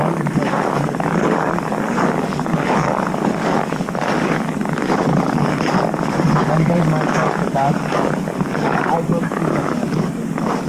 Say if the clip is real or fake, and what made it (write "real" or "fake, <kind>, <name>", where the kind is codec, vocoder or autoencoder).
fake, codec, DAC